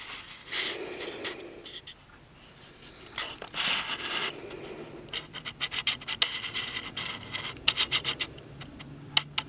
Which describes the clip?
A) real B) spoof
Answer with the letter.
A